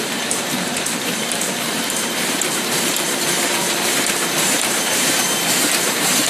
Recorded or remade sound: remade